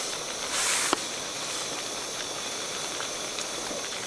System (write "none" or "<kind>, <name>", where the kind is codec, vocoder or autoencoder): none